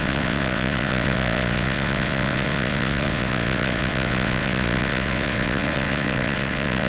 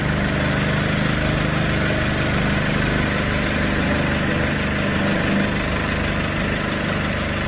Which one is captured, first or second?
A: second